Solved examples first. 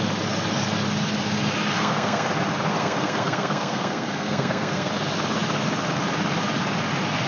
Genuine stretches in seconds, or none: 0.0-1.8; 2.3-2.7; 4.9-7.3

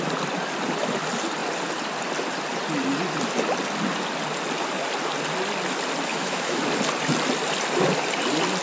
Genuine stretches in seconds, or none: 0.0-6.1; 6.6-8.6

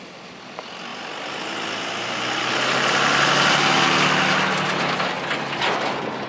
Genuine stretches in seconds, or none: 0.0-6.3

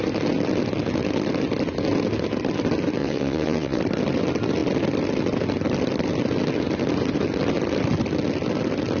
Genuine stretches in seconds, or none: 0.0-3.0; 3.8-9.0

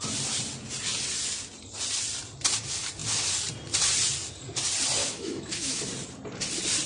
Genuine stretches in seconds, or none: 0.0-5.0; 5.8-6.9